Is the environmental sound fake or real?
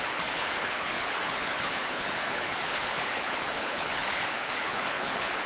fake